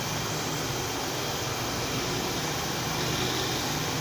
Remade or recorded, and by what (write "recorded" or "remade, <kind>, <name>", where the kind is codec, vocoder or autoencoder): recorded